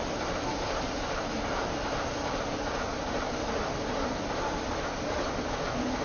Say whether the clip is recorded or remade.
recorded